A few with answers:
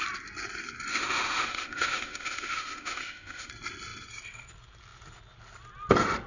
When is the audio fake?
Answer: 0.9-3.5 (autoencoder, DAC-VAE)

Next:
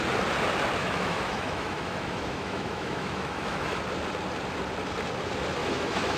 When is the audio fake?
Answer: 0.8-3.8 (autoencoder, DAC-VAE); 5.6-6.2

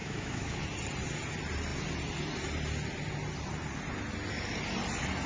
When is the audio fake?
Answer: 0.0-0.6 (autoencoder, DAC-VAE)

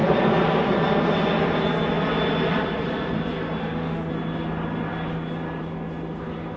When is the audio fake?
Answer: 3.6-4.1 (autoencoder, DAC-VAE)

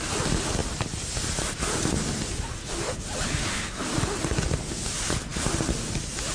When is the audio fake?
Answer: none

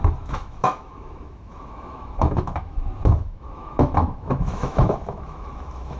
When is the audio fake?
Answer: 0.0-6.0 (autoencoder, DAC-VAE)

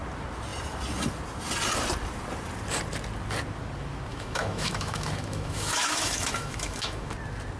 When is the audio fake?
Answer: 4.1-7.1 (autoencoder, DAC-VAE)